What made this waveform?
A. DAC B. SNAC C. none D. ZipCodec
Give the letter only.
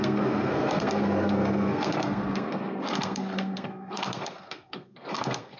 B